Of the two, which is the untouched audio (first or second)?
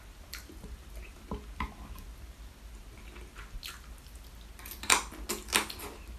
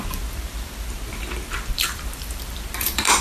first